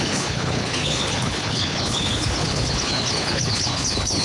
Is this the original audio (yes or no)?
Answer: no